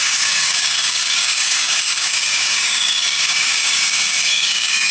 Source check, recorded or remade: remade